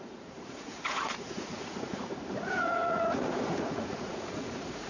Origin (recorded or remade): remade